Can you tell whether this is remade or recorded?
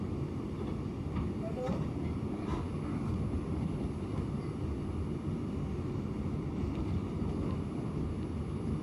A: recorded